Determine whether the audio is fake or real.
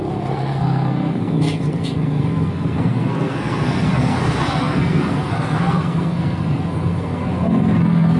fake